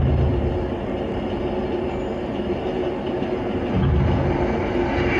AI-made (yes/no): no